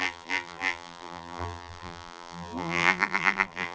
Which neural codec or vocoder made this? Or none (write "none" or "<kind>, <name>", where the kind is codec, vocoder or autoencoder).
vocoder, BigVGAN v2